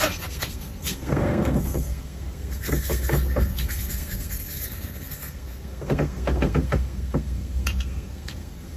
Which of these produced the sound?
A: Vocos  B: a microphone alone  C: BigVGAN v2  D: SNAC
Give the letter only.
D